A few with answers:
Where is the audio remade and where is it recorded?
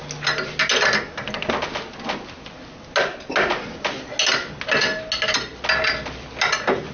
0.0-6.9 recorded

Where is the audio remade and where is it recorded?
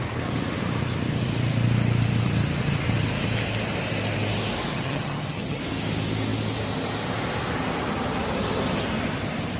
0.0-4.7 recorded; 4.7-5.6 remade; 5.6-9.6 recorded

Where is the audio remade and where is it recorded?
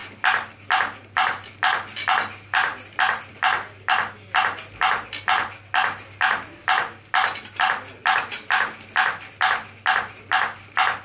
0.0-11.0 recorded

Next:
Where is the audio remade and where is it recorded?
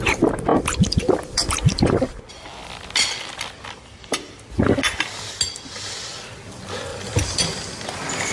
0.0-0.5 recorded; 0.5-2.3 remade; 2.3-6.9 recorded; 6.9-8.3 remade